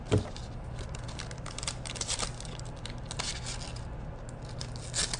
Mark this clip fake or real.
real